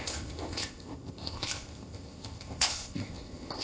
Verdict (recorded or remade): remade